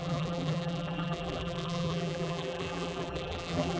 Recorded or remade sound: remade